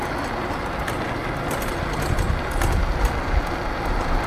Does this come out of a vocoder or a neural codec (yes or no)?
no